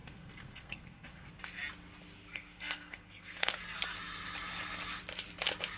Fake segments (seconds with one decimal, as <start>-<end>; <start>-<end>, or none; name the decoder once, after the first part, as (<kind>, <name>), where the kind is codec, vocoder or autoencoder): 0.0-1.3 (codec, SNAC); 2.3-3.6